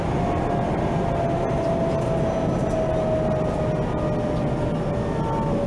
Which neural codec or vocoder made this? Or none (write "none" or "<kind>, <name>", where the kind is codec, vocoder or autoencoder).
none